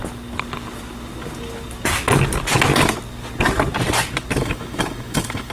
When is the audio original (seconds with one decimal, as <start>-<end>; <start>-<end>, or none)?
0.0-4.4